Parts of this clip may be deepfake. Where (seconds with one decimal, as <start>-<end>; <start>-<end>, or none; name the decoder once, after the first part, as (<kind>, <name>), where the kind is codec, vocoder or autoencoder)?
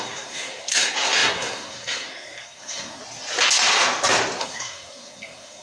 0.0-3.0 (codec, SNAC); 4.4-5.6